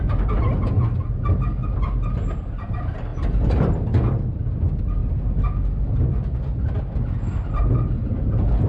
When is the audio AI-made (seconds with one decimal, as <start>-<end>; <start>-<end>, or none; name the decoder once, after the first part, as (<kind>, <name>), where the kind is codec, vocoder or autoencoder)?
none